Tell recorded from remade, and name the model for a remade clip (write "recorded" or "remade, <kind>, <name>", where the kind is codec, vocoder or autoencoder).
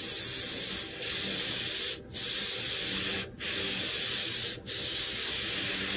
recorded